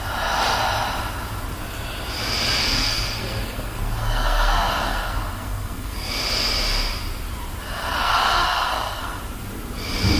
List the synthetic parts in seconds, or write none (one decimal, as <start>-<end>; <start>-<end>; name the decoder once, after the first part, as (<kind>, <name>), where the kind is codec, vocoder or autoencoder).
2.6-6.1 (codec, SNAC); 7.8-9.2